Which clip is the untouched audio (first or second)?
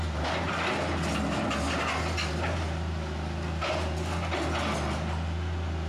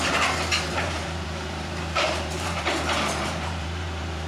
first